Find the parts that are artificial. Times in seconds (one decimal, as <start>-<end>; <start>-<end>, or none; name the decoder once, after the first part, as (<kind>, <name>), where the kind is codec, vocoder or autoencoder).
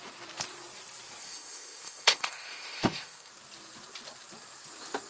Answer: 1.2-3.3 (codec, ZipCodec)